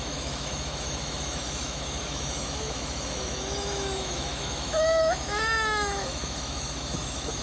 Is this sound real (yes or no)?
no